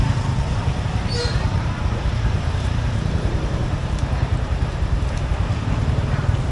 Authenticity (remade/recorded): remade